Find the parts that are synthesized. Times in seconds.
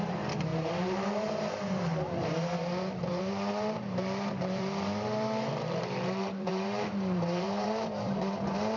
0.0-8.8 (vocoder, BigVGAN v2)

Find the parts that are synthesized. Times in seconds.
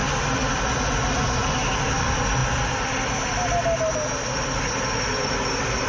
none